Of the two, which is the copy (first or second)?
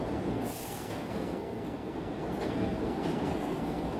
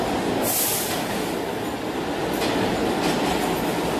first